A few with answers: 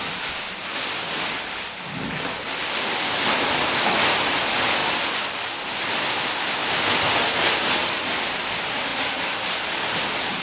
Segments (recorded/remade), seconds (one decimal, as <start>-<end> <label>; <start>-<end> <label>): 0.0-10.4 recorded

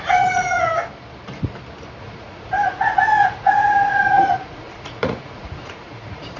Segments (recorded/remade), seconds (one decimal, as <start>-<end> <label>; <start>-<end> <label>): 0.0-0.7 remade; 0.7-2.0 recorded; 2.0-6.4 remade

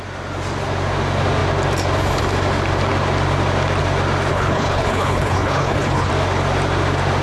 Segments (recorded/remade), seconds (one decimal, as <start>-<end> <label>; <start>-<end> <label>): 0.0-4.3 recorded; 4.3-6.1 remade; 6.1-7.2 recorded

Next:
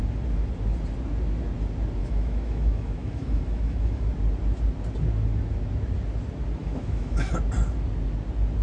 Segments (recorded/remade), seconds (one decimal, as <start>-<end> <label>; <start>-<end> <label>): 0.0-2.0 recorded; 2.0-4.1 remade; 4.1-6.6 recorded; 6.6-7.3 remade; 7.3-8.6 recorded

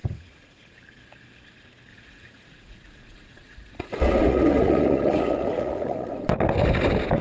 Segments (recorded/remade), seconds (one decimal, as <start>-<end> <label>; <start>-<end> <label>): 0.0-0.7 remade; 0.7-1.9 recorded; 1.9-6.2 remade; 6.2-7.2 recorded

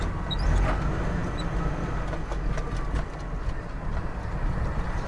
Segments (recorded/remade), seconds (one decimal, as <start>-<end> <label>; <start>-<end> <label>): 0.0-5.1 recorded